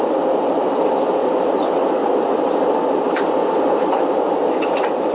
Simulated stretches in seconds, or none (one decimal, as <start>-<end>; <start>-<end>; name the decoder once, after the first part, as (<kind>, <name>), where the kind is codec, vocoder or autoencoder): none